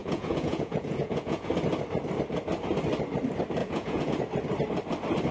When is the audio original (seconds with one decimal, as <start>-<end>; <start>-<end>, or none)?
1.5-3.6; 4.1-5.3